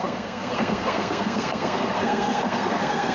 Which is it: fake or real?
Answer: fake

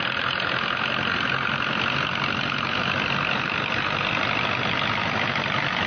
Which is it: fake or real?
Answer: real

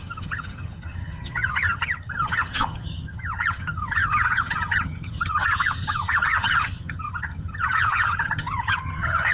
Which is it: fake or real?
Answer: fake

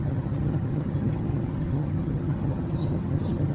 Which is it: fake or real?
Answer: fake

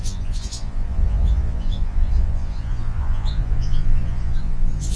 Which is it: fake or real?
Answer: fake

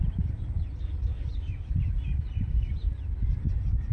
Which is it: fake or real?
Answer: fake